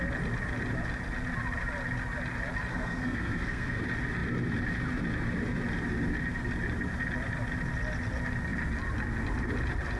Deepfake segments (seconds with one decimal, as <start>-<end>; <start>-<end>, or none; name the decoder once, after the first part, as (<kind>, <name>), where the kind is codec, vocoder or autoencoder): 2.7-3.8 (codec, SNAC)